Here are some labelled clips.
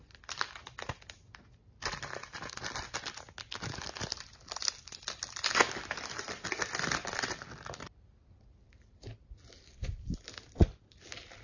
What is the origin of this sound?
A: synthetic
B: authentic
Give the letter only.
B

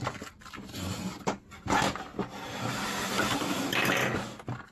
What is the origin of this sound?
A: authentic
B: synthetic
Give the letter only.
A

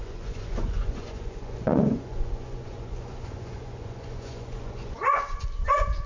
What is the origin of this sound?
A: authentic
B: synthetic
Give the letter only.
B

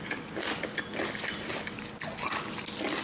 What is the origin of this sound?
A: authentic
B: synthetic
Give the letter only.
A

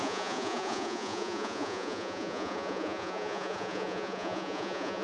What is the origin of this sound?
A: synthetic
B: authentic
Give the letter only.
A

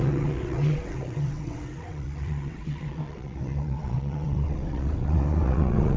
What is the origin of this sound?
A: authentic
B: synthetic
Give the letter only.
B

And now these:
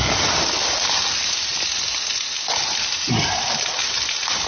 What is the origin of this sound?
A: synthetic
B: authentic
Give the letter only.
B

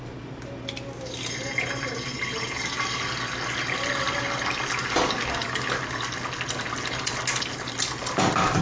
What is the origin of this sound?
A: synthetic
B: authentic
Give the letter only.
B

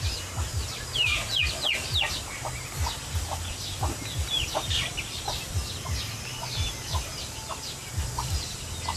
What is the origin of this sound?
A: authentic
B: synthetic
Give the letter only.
A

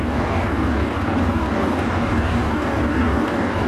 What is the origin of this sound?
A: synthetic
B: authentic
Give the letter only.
A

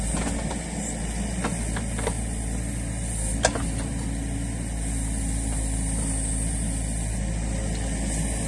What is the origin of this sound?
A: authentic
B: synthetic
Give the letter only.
A